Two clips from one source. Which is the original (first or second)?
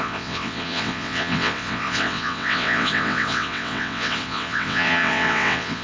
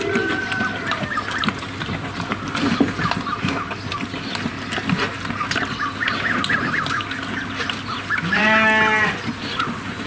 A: second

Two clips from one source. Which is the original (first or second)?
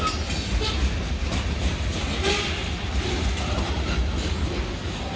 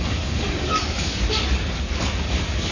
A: first